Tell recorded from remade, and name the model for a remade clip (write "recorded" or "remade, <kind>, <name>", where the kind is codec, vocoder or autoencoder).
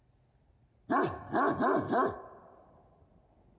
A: recorded